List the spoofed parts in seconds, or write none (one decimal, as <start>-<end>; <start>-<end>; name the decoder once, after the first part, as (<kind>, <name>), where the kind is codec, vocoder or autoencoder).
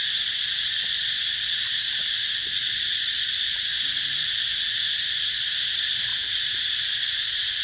0.0-3.1 (vocoder, BigVGAN v2); 3.7-5.2; 6.1-7.6